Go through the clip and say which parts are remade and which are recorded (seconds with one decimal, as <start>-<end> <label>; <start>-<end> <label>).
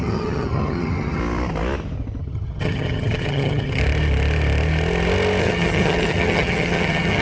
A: 0.0-1.2 remade; 1.2-2.2 recorded; 2.2-3.8 remade; 3.8-5.4 recorded; 5.4-7.2 remade